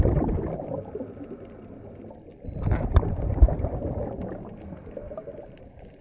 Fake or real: fake